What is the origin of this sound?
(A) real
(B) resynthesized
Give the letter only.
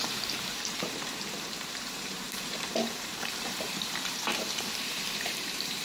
B